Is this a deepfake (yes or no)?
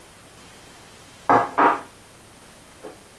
no